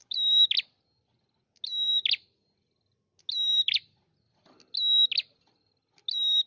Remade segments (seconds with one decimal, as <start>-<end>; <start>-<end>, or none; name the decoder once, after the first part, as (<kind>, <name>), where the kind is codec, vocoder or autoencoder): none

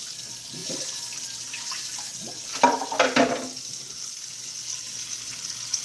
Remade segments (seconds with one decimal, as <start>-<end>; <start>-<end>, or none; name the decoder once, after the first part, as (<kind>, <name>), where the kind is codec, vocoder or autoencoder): none

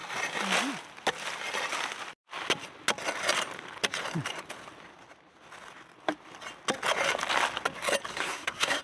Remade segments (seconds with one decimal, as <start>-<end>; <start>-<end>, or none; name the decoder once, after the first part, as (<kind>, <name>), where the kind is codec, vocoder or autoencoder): 8.1-8.8 (codec, SNAC)

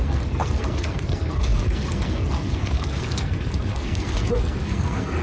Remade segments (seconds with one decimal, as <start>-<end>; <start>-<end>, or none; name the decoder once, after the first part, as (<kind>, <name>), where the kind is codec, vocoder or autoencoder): 0.0-5.2 (codec, SNAC)

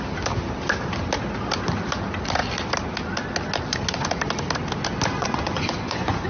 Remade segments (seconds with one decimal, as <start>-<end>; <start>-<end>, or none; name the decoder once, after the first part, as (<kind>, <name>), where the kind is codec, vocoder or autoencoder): 5.2-6.3 (vocoder, Vocos)

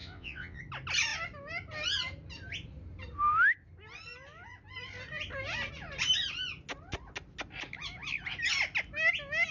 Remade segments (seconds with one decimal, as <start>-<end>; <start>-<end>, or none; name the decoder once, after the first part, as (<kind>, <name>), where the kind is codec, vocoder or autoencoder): 0.0-0.6 (vocoder, WaveNeXt)

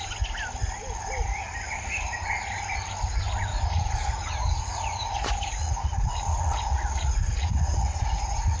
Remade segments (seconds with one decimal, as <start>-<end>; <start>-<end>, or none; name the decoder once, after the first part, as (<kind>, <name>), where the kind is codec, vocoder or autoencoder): 3.5-8.6 (vocoder, Vocos)